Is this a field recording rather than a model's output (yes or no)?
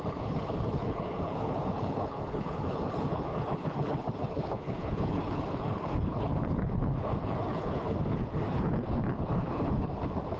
no